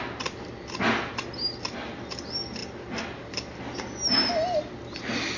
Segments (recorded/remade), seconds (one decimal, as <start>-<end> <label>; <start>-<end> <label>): 0.0-5.4 recorded